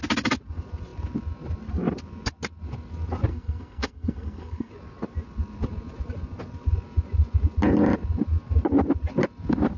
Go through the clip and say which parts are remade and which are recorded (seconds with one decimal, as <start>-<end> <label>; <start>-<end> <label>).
0.0-3.3 recorded; 3.3-4.7 remade; 4.7-9.8 recorded